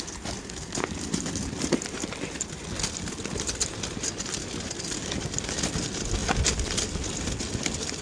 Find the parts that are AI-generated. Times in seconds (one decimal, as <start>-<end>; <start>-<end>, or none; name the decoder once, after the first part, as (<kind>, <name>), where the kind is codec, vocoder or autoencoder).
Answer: none